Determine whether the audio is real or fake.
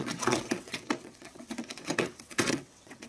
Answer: fake